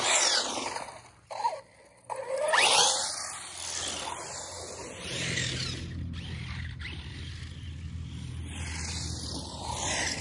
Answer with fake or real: real